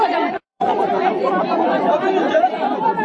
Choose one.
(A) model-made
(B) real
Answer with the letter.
A